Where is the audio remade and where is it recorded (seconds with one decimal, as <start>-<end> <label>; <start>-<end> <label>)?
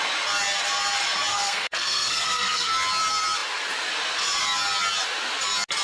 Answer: 0.0-1.3 recorded; 1.3-2.7 remade; 2.7-5.8 recorded